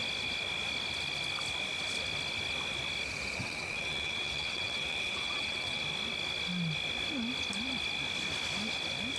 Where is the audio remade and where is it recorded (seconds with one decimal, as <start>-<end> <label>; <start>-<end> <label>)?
0.0-3.4 recorded; 3.4-5.8 remade; 5.8-9.2 recorded